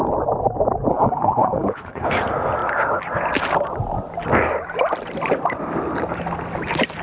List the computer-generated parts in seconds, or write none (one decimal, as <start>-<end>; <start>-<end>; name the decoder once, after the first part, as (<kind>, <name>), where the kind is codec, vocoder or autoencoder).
0.9-2.1 (codec, HILCodec)